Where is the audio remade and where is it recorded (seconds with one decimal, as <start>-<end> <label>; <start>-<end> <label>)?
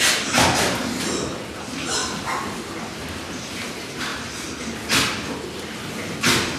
0.0-4.1 recorded; 4.1-4.6 remade; 4.6-6.6 recorded